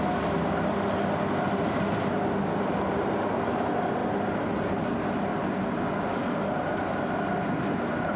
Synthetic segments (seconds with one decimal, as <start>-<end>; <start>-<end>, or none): none